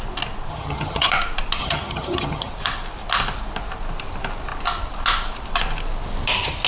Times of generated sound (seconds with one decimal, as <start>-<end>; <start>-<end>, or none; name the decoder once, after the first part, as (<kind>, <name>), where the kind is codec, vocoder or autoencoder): 0.5-1.1 (vocoder, HiFi-GAN); 1.6-2.5